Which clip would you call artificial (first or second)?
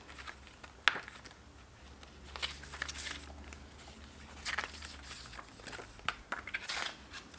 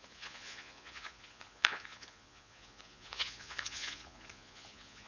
second